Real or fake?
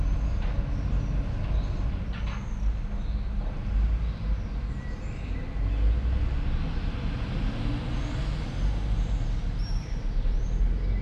real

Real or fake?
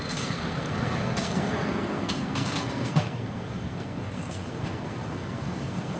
fake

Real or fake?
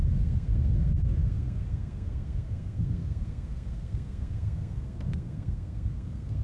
fake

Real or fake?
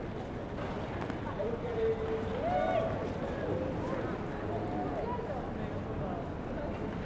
real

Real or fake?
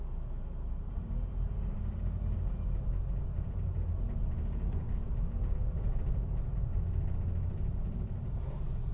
real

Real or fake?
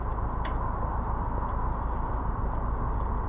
real